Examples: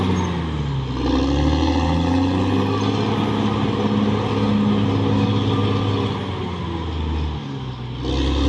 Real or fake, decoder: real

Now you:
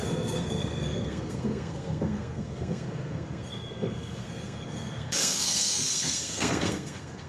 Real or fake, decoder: fake, codec, SNAC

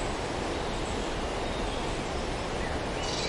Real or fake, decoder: real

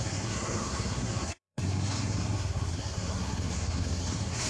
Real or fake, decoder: fake, codec, SNAC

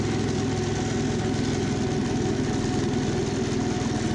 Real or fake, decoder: real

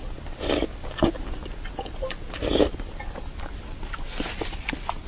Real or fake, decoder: real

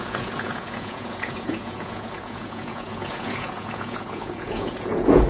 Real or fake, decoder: fake, vocoder, Vocos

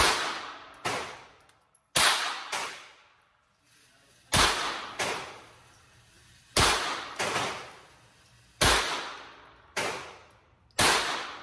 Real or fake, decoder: real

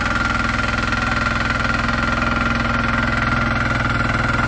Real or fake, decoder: real